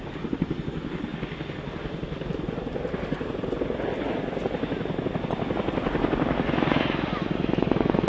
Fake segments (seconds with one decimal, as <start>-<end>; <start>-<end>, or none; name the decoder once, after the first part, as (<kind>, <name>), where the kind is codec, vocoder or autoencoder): none